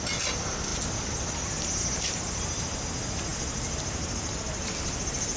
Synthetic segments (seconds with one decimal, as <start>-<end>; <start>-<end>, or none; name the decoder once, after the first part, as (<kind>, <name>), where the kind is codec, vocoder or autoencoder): none